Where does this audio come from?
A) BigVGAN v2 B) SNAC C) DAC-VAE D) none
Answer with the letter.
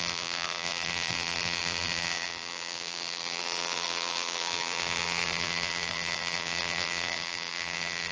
A